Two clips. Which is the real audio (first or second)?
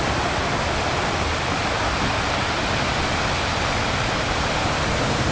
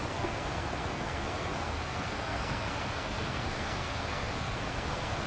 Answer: first